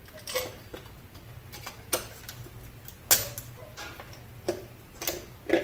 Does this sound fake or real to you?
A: real